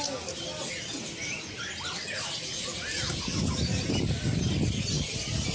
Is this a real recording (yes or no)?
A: yes